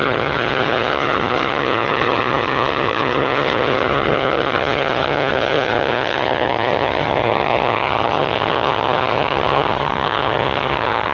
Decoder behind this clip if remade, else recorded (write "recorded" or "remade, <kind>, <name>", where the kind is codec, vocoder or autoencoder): remade, vocoder, HiFi-GAN